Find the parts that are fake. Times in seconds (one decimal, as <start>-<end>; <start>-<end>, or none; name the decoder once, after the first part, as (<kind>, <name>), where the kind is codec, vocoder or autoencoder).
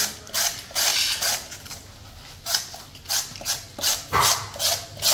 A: none